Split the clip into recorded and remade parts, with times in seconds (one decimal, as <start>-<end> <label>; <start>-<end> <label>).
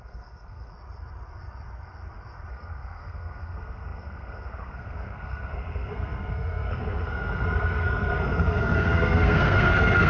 0.0-0.7 remade; 0.7-2.5 recorded; 2.5-10.1 remade